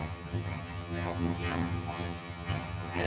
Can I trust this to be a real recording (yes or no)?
no